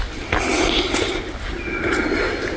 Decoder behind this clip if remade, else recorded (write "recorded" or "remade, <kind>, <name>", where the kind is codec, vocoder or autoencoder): recorded